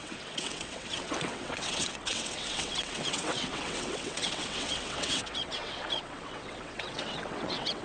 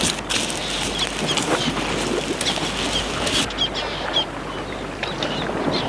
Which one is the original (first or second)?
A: second